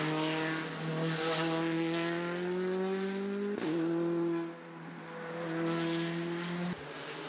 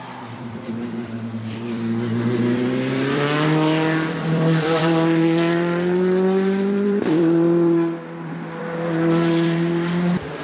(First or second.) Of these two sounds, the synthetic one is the second